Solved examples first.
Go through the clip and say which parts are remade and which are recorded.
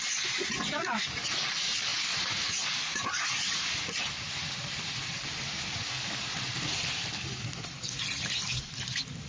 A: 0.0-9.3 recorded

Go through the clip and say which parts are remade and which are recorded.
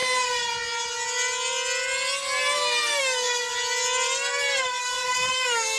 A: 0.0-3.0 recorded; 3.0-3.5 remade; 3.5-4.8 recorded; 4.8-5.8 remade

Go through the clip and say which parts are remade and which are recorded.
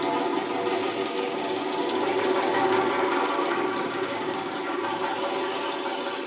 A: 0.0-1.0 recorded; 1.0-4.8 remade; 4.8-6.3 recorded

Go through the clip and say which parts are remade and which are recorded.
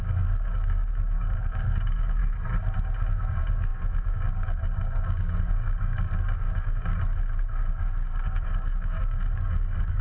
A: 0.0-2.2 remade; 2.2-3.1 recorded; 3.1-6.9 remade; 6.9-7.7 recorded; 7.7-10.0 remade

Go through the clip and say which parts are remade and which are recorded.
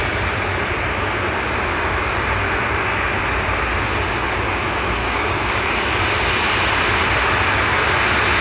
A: 0.0-1.7 recorded; 1.7-2.6 remade; 2.6-5.0 recorded; 5.0-5.6 remade; 5.6-8.4 recorded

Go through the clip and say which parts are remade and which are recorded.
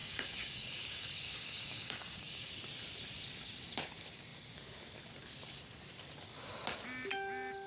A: 0.0-2.5 remade; 2.5-7.7 recorded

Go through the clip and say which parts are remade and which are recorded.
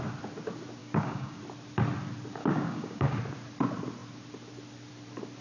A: 0.0-0.8 recorded; 0.8-1.4 remade; 1.4-2.4 recorded; 2.4-3.2 remade; 3.2-5.4 recorded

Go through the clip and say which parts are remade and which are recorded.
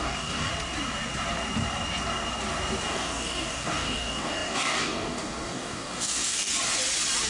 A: 0.0-0.5 remade; 0.5-2.9 recorded; 2.9-6.5 remade; 6.5-7.3 recorded